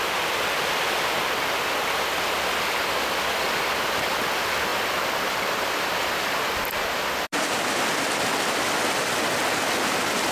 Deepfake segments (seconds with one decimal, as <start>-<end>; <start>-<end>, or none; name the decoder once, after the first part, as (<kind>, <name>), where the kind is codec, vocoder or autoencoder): none